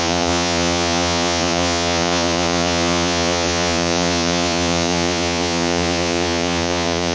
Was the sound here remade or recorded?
remade